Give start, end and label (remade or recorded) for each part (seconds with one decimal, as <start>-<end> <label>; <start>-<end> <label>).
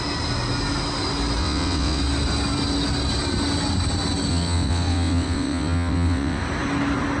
0.0-1.4 recorded; 1.4-2.0 remade; 2.0-4.3 recorded; 4.3-6.4 remade; 6.4-7.2 recorded